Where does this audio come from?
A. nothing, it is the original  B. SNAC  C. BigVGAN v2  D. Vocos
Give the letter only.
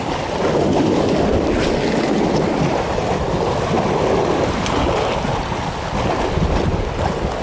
A